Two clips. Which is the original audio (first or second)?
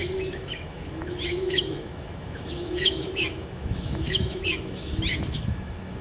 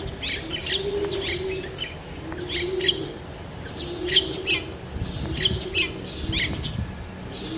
second